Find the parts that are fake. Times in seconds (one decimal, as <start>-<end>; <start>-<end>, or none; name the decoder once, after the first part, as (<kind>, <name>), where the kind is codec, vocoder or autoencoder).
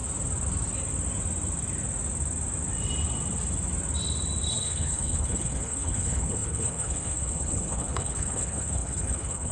4.5-9.5 (codec, HILCodec)